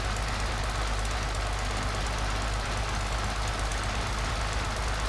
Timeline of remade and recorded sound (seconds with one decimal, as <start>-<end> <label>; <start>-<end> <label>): 0.0-5.1 recorded